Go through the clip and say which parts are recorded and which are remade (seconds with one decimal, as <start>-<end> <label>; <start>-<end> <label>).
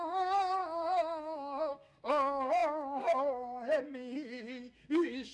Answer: 0.0-5.3 remade